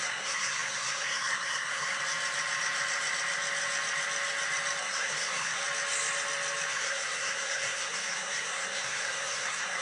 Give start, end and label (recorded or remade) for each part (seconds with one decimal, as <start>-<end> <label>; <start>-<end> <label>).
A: 0.0-2.0 remade; 2.0-4.8 recorded; 4.8-5.6 remade; 5.6-6.7 recorded; 6.7-9.8 remade